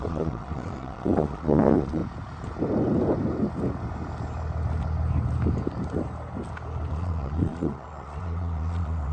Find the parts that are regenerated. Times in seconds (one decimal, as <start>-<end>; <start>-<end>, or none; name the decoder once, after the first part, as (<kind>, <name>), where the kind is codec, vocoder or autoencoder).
0.0-2.0 (vocoder, Vocos); 6.9-9.1